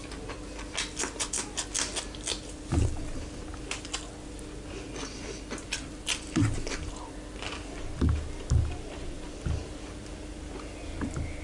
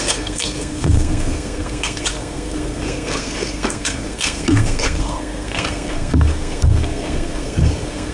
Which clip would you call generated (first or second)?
second